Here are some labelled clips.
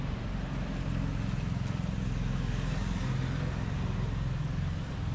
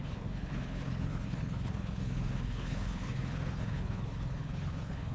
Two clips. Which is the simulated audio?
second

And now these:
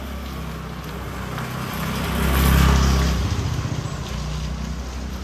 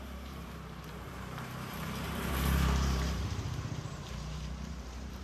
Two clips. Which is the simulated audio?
second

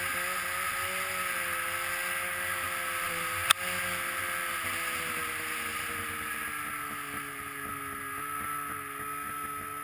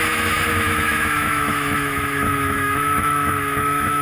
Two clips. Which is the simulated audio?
second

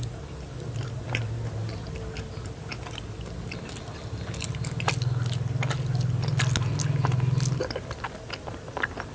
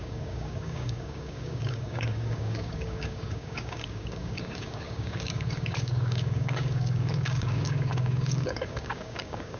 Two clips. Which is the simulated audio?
second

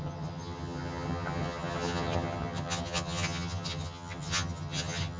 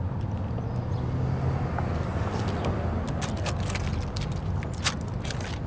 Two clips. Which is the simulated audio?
first